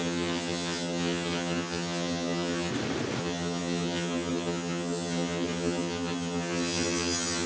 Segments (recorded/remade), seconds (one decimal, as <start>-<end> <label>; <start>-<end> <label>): 0.0-2.7 remade; 2.7-3.2 recorded; 3.2-7.5 remade